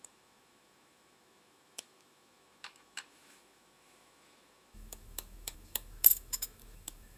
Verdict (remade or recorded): remade